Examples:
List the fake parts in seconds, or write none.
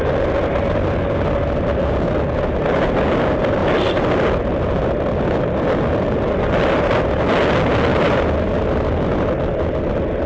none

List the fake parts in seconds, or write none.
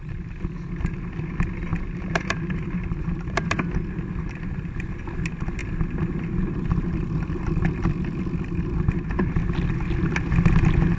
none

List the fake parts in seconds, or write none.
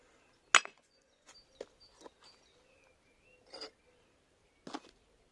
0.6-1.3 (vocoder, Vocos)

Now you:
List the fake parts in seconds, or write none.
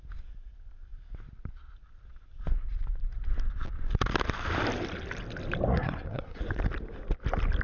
5.7-6.4 (codec, SNAC)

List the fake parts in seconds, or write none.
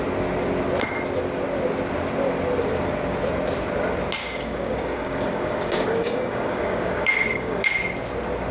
4.2-7.7 (codec, DAC)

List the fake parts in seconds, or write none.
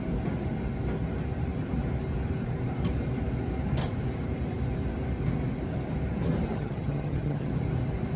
6.5-7.5 (vocoder, HiFi-GAN)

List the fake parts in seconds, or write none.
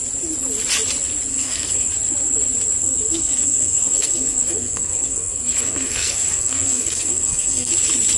1.3-1.9 (codec, SNAC); 2.8-7.7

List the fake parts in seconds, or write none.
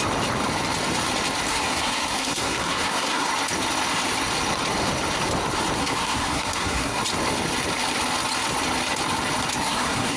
1.5-3.3 (codec, SNAC); 5.8-7.0; 9.6-10.2